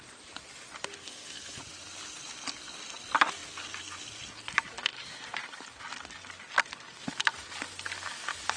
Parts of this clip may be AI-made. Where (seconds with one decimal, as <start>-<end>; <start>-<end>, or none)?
1.0-1.6